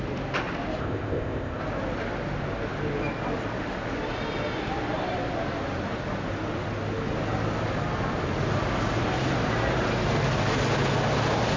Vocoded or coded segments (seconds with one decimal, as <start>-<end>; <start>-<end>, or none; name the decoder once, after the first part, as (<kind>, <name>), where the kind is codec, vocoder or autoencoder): 0.8-1.6 (codec, ZipCodec)